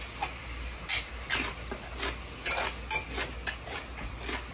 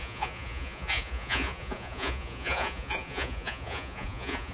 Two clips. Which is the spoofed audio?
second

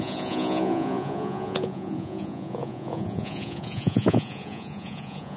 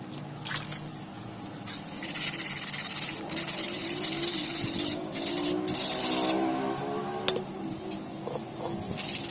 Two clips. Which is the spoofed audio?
first